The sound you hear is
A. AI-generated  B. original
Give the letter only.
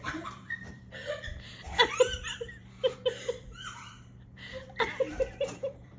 A